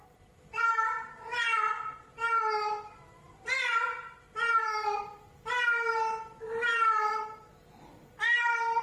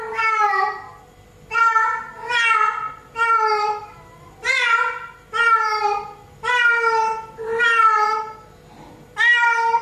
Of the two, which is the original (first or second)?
second